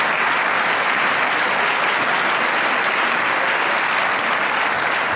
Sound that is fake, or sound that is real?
real